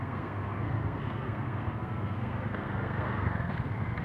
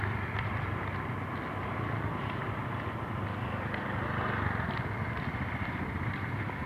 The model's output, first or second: first